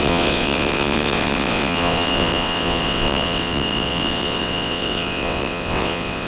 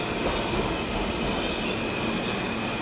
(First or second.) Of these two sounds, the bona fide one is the second